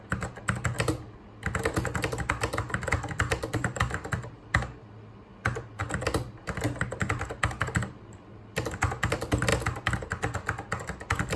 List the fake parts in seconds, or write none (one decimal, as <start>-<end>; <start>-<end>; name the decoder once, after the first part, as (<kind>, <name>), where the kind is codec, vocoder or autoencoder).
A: none